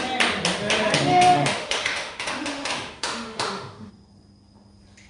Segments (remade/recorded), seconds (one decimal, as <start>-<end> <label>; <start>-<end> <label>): 0.0-1.1 recorded; 1.1-3.9 remade; 3.9-5.1 recorded